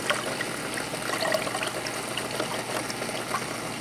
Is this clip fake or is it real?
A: real